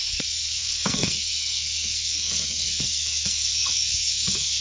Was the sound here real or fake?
fake